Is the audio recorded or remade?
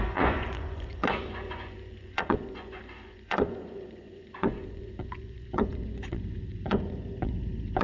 remade